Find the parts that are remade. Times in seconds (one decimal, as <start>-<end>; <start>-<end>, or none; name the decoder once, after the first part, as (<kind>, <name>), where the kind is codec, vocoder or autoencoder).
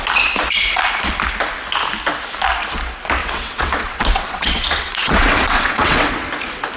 3.2-6.1 (vocoder, WaveNeXt)